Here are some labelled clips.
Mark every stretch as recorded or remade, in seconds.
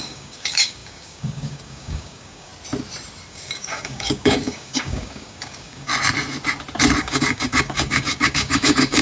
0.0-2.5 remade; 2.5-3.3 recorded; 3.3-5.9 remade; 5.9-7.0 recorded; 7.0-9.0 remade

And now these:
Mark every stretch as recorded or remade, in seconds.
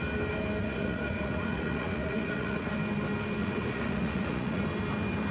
0.0-0.6 recorded; 0.6-2.7 remade; 2.7-3.4 recorded; 3.4-4.6 remade; 4.6-5.3 recorded